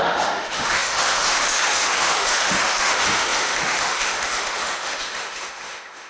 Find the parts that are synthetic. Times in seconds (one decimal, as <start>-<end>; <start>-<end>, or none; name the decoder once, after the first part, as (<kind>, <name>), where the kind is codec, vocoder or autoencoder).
0.0-6.1 (autoencoder, DAC-VAE)